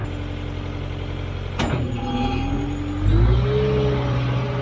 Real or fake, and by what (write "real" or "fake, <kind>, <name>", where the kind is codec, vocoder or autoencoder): real